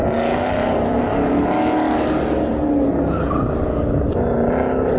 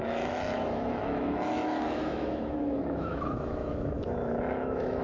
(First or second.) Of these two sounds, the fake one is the second